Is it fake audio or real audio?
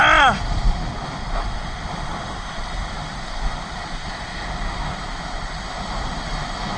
real